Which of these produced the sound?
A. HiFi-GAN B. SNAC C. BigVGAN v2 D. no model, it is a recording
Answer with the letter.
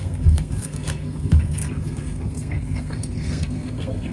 B